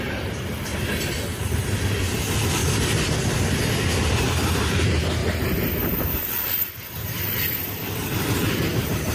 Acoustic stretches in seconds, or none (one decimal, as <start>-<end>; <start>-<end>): 0.7-1.4; 2.6-4.1; 5.2-5.7; 6.2-7.0